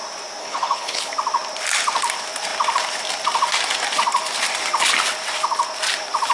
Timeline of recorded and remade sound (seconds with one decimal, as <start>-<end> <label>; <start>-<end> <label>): 0.0-0.4 recorded; 0.4-1.1 remade; 1.1-6.3 recorded

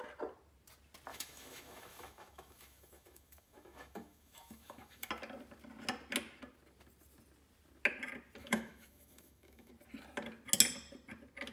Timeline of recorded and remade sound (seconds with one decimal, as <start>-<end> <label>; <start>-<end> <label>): 0.0-1.1 recorded; 1.1-5.1 remade; 5.1-8.4 recorded; 8.4-9.7 remade; 9.7-11.5 recorded

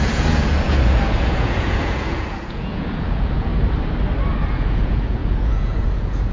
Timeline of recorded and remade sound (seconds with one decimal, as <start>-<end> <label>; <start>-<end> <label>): 0.0-3.5 remade; 3.5-4.5 recorded; 4.5-6.3 remade

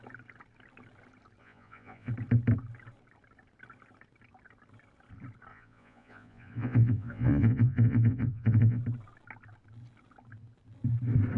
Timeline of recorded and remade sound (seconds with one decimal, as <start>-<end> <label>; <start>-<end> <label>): 0.0-1.4 recorded; 1.4-2.1 remade; 2.1-5.5 recorded; 5.5-8.8 remade; 8.8-11.4 recorded